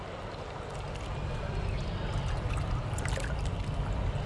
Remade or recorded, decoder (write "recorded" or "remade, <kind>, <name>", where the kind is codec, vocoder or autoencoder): recorded